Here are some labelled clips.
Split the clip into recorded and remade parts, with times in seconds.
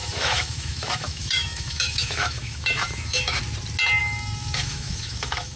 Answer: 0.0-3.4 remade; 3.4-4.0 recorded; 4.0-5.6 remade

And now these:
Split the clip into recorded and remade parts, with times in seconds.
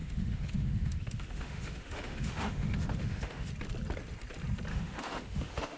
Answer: 0.0-3.5 remade; 3.5-4.7 recorded; 4.7-5.8 remade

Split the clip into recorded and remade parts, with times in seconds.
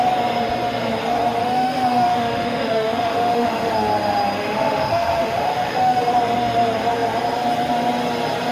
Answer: 0.0-1.4 recorded; 1.4-3.7 remade; 3.7-4.4 recorded; 4.4-6.1 remade; 6.1-8.5 recorded